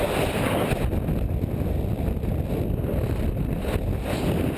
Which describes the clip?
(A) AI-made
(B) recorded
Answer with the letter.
B